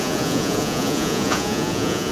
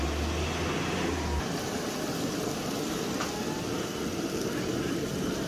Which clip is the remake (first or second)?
first